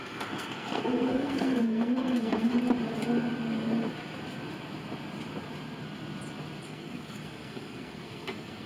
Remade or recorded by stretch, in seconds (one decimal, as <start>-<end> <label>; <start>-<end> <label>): 0.0-2.5 remade; 2.5-6.6 recorded; 6.6-8.7 remade